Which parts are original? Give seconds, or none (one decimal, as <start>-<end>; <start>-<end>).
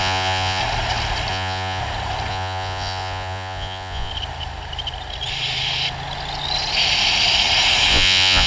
0.6-1.3; 1.8-2.3; 4.1-7.9